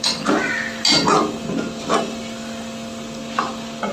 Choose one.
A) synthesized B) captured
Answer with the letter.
B